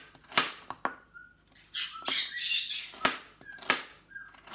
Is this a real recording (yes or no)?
yes